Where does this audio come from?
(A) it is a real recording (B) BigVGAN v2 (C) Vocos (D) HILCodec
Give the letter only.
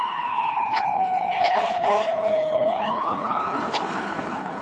D